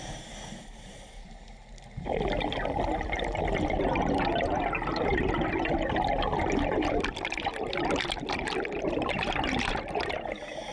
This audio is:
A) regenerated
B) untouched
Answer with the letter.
B